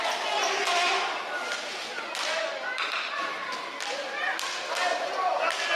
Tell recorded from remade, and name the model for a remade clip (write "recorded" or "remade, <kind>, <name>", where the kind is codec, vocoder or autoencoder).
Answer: recorded